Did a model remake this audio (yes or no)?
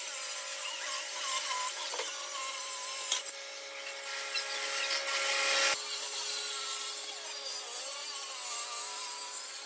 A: no